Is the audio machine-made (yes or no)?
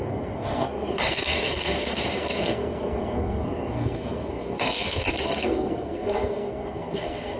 yes